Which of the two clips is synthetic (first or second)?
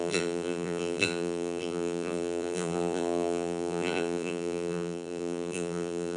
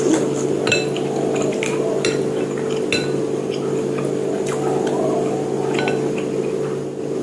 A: first